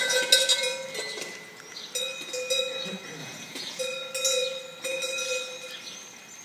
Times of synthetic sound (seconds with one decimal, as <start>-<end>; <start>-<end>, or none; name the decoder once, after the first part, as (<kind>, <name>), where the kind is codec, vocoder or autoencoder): 3.2-3.8 (vocoder, Vocos)